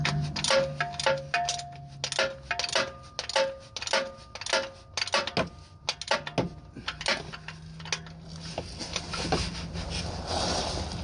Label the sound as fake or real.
real